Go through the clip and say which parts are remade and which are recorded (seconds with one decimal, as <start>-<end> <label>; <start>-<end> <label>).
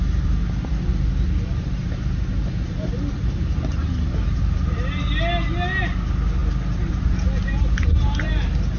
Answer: 0.0-8.8 recorded